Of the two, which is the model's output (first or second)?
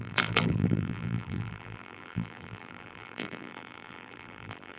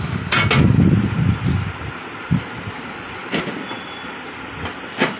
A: first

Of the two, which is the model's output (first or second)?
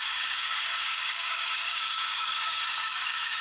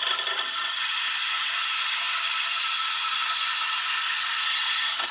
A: first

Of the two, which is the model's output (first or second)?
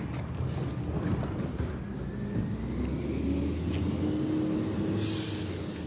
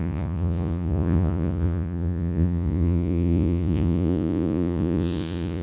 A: second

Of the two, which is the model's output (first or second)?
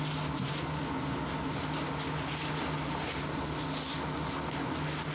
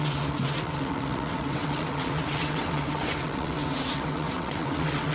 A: second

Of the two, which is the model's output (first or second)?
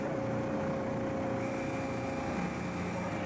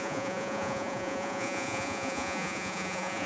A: second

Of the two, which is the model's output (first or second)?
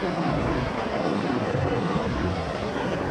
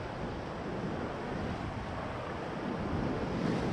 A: first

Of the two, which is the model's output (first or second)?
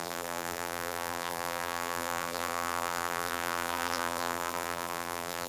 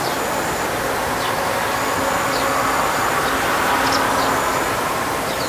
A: first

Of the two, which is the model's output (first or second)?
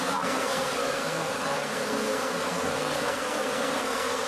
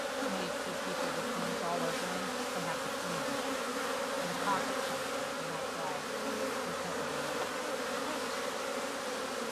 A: first